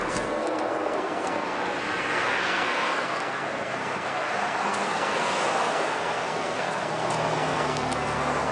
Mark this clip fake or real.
fake